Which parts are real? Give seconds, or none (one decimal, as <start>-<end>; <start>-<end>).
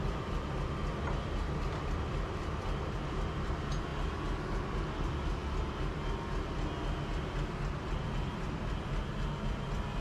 3.9-4.7; 5.4-7.2